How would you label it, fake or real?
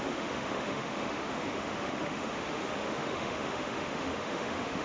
fake